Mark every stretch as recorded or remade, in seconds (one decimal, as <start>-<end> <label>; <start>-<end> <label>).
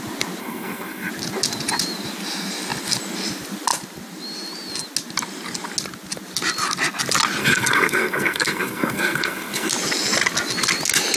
0.0-0.4 recorded; 0.4-1.1 remade; 1.1-7.4 recorded; 7.4-9.7 remade; 9.7-11.2 recorded